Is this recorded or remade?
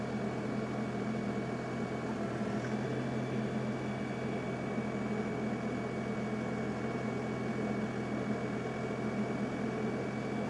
recorded